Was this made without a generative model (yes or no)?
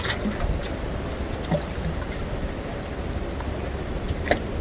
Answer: yes